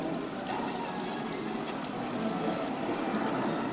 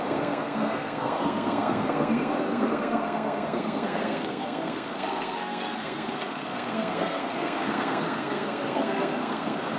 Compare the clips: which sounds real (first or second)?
first